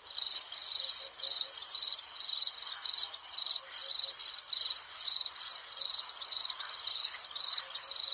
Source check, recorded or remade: recorded